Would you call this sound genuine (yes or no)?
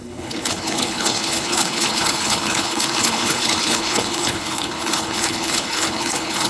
no